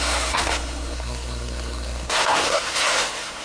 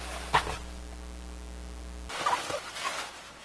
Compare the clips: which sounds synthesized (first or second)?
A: first